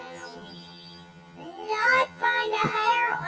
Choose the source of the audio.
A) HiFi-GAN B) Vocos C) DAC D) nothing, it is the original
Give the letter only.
A